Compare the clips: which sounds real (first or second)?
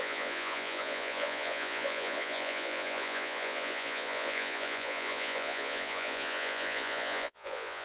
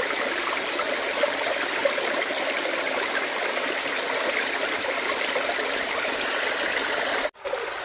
second